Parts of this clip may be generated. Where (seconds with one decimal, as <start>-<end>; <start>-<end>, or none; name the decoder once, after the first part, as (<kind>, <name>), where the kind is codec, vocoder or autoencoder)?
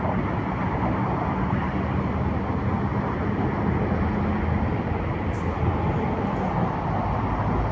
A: none